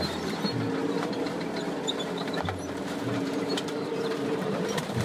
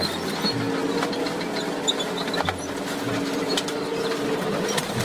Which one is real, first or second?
second